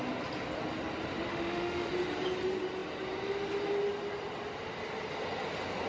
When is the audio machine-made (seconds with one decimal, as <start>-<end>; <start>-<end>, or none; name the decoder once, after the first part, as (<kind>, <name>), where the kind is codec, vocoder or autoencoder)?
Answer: 1.3-1.9 (autoencoder, DAC-VAE)